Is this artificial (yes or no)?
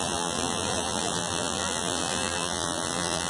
yes